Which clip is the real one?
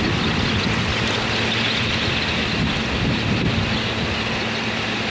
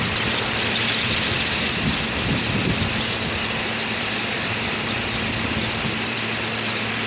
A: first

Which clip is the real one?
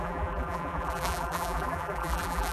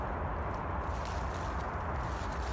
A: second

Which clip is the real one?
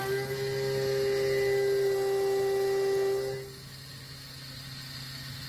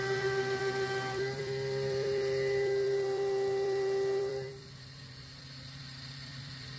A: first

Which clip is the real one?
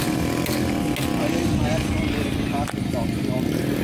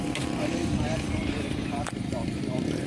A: first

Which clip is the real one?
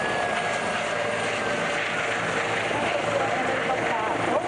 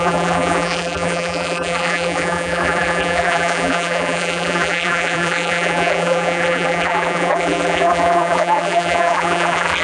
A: first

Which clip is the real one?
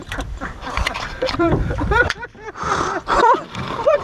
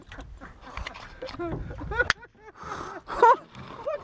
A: second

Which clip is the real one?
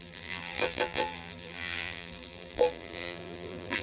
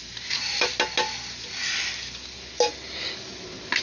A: second